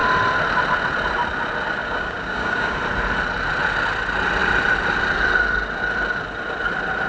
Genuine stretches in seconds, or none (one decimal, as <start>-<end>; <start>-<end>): 0.0-1.8; 2.8-7.1